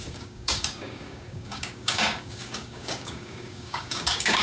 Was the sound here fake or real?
fake